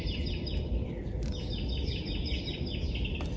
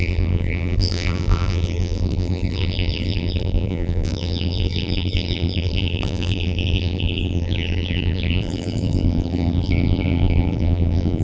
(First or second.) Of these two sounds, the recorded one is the first